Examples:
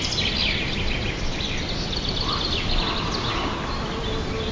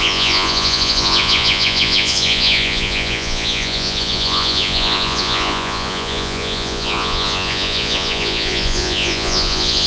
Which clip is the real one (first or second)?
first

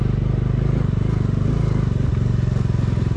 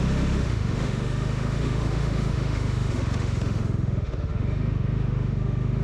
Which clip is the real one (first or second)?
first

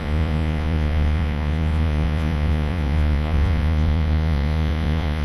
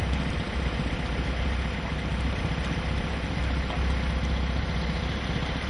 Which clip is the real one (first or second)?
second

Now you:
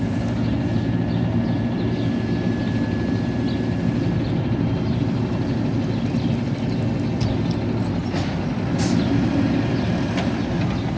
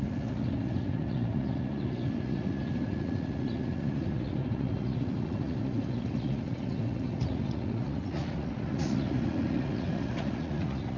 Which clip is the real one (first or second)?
first